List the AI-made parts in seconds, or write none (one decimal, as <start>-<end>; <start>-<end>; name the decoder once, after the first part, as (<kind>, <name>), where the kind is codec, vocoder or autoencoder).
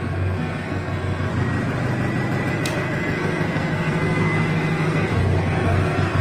0.0-1.3 (codec, SNAC); 2.5-6.2